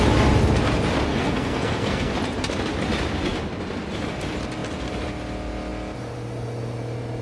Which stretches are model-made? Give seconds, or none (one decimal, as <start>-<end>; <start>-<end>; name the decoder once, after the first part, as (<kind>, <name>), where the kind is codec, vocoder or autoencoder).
1.1-2.1 (codec, SNAC)